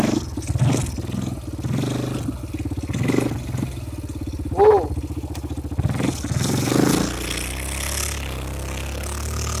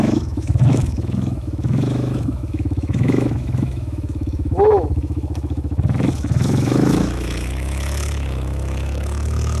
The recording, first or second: first